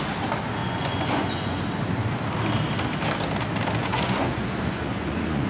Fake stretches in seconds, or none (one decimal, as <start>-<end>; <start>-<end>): 0.6-1.6; 3.8-5.5